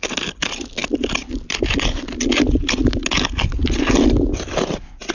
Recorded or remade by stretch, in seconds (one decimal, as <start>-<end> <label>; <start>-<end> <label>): 0.0-5.1 recorded

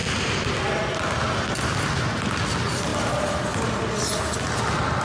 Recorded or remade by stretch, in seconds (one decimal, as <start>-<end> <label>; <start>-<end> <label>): 0.0-5.0 recorded